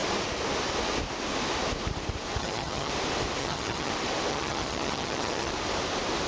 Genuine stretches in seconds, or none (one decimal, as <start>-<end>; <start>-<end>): 0.0-2.4; 2.9-3.4; 3.9-4.3; 5.5-6.3